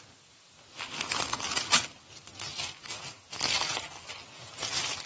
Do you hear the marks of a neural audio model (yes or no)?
no